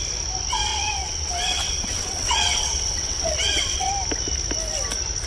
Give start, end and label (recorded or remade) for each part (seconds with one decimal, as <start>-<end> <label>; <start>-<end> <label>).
0.0-0.7 recorded; 0.7-3.9 remade; 3.9-5.3 recorded